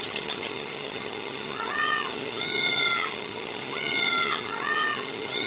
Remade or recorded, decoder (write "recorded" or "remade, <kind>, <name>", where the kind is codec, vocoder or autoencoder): remade, vocoder, HiFi-GAN